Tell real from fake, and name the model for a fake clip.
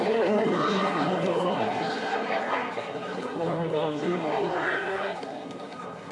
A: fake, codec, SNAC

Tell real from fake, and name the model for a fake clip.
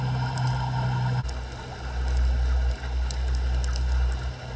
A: real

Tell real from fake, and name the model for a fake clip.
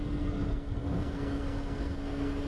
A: fake, codec, SNAC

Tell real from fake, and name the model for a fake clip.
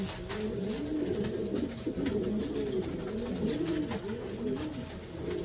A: real